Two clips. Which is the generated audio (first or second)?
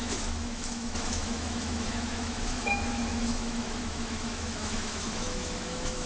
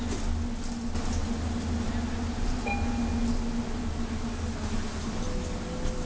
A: first